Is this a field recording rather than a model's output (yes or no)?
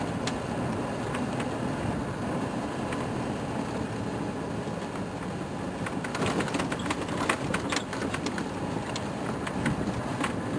yes